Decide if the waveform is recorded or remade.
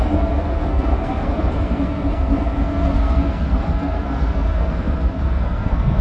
remade